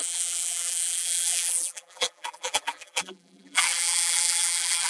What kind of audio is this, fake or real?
fake